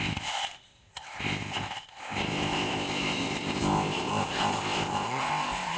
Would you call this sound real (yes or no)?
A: no